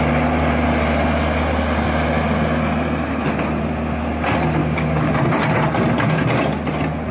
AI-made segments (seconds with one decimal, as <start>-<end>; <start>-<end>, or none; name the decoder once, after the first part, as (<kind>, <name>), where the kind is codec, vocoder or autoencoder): 4.6-5.1 (codec, DAC)

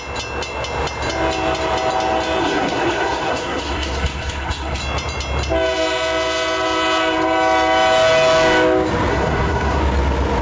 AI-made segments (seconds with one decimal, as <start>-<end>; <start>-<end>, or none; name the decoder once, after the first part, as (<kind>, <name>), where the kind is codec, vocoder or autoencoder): 2.4-4.8 (codec, SNAC); 9.1-9.8

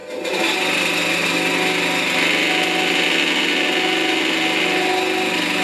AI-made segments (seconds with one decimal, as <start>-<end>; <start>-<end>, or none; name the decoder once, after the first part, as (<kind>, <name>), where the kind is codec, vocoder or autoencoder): none

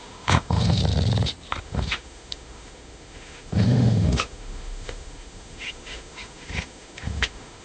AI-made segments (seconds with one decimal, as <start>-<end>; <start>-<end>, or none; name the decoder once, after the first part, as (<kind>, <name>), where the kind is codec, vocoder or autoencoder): 0.0-0.8 (autoencoder, DAC-VAE); 1.6-7.6